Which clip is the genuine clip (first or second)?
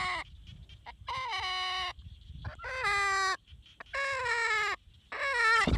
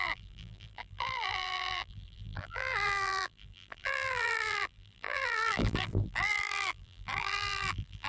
first